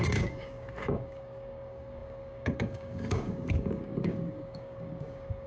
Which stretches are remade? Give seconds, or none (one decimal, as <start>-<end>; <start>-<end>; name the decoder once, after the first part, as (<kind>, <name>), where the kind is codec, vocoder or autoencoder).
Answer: 0.0-5.5 (codec, DAC)